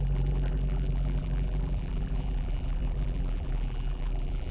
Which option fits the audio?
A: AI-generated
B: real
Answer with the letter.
A